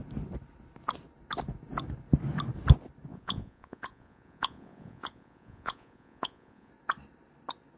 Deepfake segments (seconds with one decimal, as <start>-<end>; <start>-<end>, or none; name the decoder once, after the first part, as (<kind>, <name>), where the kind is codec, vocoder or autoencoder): 3.1-6.7 (vocoder, Vocos)